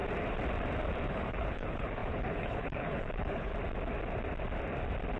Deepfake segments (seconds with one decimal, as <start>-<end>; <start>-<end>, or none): 1.1-3.5